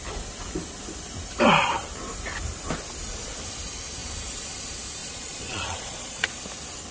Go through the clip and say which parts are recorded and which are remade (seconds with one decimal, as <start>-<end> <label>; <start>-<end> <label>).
0.0-5.0 recorded; 5.0-6.3 remade; 6.3-6.9 recorded